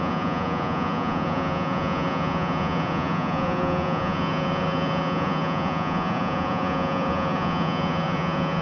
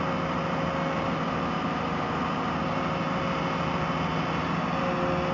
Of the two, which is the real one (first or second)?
second